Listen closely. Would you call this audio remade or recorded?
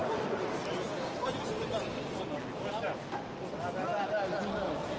recorded